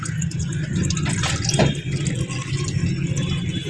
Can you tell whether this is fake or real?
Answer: real